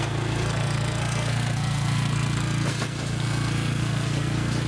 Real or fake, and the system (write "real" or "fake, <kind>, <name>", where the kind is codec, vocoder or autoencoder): fake, codec, SNAC